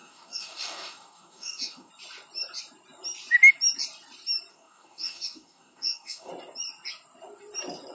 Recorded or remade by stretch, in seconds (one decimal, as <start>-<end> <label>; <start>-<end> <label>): 0.0-1.9 remade; 1.9-4.5 recorded; 4.5-6.3 remade; 6.3-7.9 recorded